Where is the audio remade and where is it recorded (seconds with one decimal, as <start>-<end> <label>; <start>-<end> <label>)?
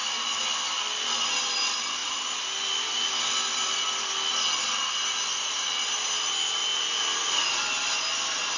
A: 0.0-8.6 recorded